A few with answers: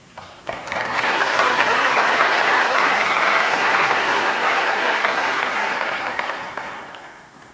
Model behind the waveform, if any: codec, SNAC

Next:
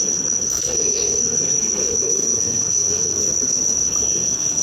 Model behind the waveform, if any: codec, SNAC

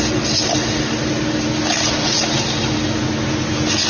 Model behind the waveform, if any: none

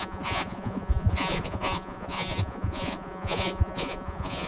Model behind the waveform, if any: vocoder, Vocos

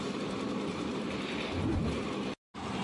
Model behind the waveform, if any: none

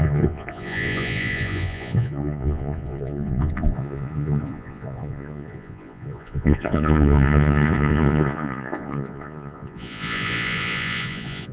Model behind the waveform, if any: vocoder, Vocos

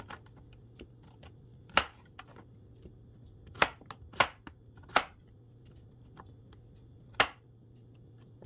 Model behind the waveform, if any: none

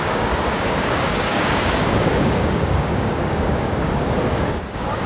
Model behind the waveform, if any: codec, DAC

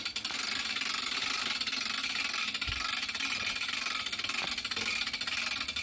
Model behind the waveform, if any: none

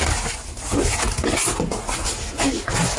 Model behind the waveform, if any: none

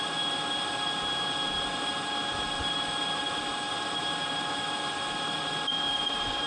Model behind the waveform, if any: vocoder, BigVGAN v2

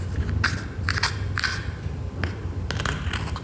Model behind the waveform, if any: none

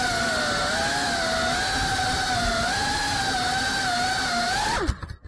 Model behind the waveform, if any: none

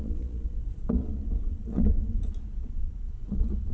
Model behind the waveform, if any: vocoder, Vocos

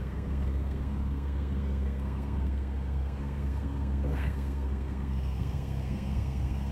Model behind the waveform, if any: codec, SNAC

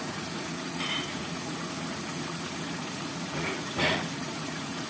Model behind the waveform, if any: vocoder, Vocos